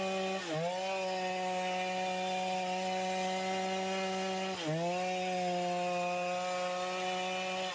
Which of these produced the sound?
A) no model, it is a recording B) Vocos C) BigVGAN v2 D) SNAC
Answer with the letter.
A